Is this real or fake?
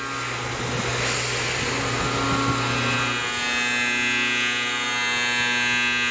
real